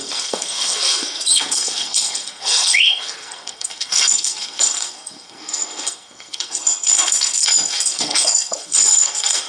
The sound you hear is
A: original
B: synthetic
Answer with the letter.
B